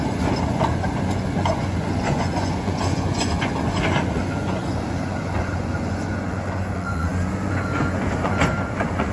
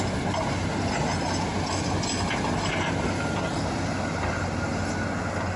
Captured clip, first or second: second